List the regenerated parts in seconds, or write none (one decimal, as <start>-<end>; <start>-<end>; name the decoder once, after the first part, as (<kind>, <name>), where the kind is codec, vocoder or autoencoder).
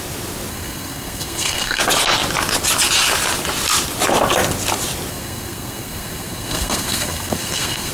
0.5-1.8 (codec, SNAC); 5.1-7.9